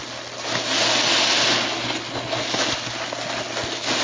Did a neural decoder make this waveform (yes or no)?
no